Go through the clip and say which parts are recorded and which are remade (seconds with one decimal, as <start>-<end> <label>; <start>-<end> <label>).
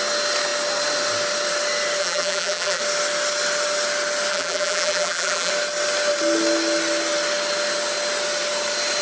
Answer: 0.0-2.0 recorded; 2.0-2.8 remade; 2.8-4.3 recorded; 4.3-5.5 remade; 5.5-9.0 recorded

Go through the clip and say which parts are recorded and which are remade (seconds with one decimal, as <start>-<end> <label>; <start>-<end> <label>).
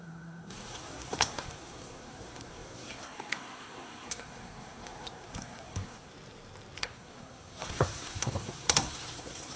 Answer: 0.0-6.1 remade; 6.1-6.8 recorded; 6.8-9.6 remade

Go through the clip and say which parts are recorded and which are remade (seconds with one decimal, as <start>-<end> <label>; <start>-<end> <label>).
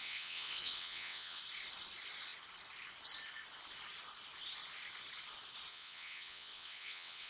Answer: 0.0-1.4 remade; 1.4-5.7 recorded; 5.7-7.3 remade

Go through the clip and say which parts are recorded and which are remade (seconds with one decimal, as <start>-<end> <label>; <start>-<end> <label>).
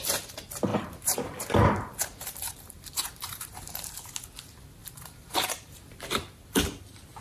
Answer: 0.0-0.7 recorded; 0.7-3.9 remade; 3.9-4.8 recorded; 4.8-6.0 remade; 6.0-7.2 recorded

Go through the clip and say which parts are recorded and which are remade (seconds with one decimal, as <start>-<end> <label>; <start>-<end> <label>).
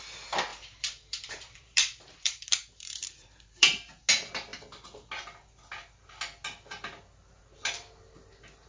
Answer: 0.0-0.5 recorded; 0.5-3.9 remade; 3.9-8.7 recorded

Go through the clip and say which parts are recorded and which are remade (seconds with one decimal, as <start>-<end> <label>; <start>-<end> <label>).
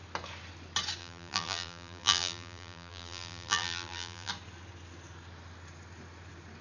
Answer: 0.0-1.0 recorded; 1.0-4.3 remade; 4.3-6.6 recorded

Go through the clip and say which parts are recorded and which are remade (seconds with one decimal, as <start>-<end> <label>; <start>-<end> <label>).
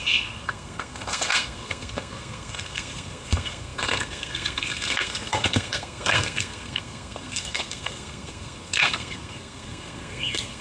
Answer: 0.0-10.6 remade